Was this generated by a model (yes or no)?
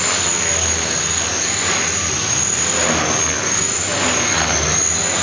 no